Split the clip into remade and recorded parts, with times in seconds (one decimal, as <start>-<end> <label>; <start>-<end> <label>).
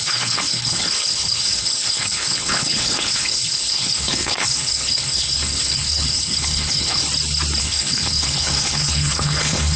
0.0-7.0 remade; 7.0-7.6 recorded; 7.6-9.8 remade